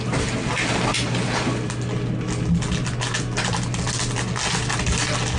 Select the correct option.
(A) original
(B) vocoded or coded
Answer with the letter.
A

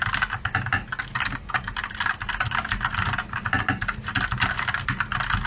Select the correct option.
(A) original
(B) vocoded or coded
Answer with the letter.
A